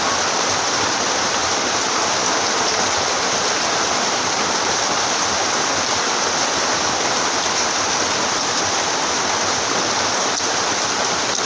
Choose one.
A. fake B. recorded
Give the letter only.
B